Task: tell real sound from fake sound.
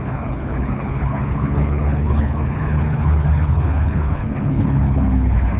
fake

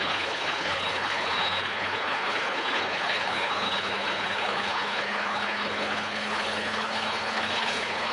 fake